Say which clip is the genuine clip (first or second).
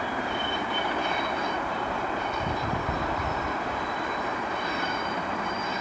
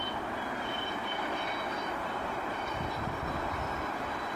second